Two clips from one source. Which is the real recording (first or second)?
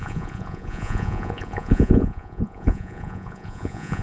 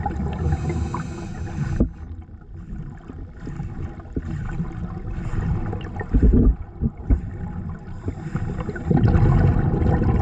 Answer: second